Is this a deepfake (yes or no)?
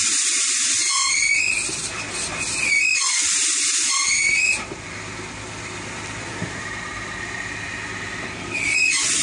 no